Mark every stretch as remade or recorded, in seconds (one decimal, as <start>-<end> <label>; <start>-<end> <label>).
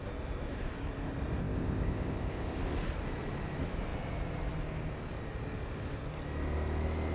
0.0-1.4 recorded; 1.4-2.6 remade; 2.6-7.1 recorded